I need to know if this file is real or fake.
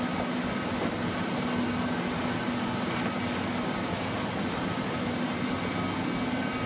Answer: real